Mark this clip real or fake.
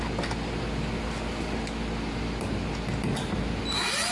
real